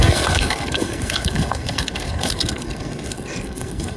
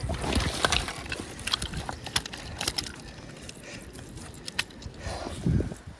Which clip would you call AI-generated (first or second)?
first